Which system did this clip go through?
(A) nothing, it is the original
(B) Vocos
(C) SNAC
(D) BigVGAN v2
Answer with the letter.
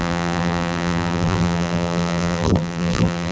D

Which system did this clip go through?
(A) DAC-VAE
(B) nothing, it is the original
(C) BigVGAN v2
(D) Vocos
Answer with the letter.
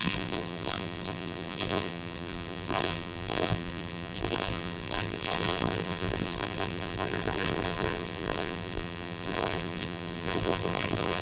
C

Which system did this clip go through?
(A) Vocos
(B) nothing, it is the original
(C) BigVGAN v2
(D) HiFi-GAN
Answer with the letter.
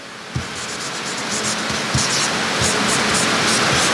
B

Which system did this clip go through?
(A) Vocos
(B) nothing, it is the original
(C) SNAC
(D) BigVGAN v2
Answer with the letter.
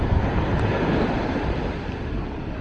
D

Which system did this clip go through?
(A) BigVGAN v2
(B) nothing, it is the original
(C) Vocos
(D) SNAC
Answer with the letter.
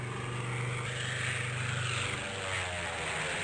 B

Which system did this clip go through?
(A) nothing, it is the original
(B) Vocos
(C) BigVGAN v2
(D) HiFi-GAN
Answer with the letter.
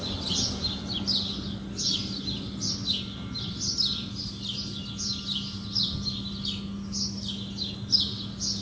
A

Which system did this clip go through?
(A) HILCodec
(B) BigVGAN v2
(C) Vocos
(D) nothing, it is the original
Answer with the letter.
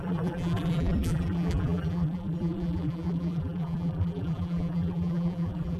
B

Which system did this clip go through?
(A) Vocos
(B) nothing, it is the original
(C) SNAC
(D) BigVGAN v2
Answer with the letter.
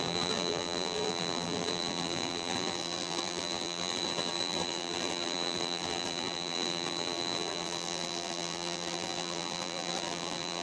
D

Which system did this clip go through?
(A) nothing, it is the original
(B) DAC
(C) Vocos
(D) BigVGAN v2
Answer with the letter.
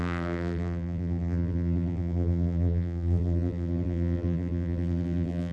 D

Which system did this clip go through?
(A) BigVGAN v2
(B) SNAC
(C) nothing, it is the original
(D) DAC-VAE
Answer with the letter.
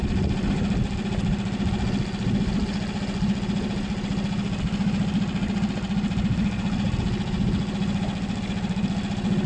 C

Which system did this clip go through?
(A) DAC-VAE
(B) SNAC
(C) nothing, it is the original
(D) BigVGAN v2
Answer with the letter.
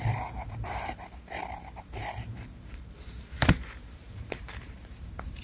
D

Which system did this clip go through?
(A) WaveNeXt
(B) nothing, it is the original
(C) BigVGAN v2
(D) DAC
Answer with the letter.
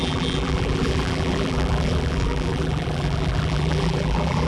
C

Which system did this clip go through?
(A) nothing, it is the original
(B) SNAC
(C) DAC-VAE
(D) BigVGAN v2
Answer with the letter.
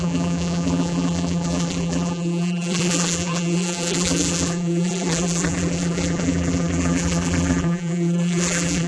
D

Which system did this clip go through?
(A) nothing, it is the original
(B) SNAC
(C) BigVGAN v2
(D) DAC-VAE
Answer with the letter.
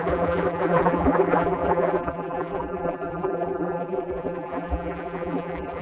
C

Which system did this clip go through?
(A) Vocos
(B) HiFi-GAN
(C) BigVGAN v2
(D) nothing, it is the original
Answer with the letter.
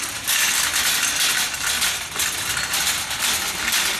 D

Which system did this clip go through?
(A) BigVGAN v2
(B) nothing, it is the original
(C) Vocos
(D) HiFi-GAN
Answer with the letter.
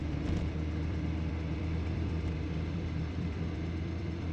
A